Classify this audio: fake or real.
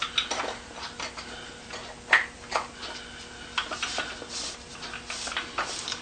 real